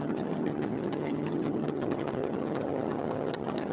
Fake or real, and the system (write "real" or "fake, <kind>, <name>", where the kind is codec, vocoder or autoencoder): fake, vocoder, HiFi-GAN